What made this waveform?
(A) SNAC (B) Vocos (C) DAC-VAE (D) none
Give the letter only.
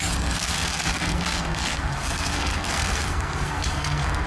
A